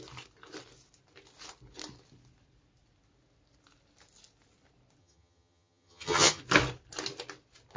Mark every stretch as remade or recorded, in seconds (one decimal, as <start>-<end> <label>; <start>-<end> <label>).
0.0-5.0 recorded; 5.0-6.4 remade; 6.4-7.8 recorded